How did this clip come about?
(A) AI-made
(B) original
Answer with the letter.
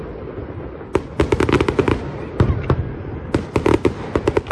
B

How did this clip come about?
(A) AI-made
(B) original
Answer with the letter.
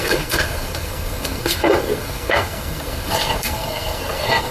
A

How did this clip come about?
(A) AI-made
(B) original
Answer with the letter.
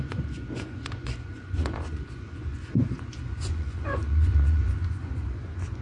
A